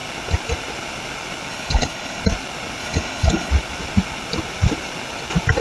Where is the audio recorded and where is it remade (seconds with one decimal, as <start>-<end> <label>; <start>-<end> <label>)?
0.0-1.5 recorded; 1.5-2.2 remade; 2.2-2.8 recorded; 2.8-3.5 remade; 3.5-5.6 recorded